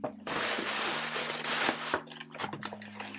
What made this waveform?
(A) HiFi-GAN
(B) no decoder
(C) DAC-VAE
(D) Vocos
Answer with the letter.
B